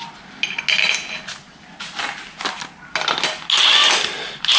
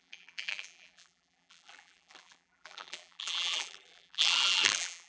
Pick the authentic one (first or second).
first